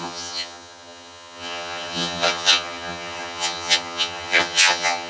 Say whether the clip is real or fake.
fake